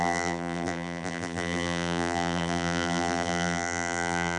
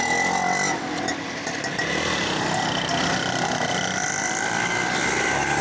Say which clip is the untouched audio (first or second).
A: second